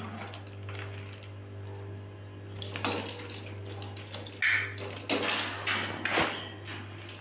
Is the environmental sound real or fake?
real